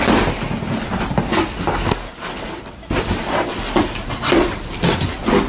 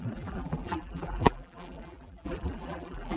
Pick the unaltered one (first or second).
first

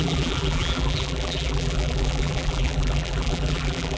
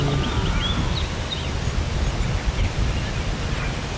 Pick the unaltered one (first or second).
second